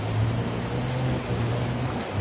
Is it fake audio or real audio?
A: real